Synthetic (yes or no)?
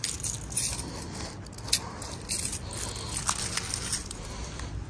no